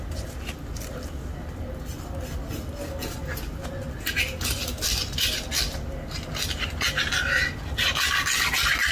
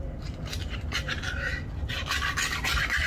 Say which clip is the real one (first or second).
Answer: first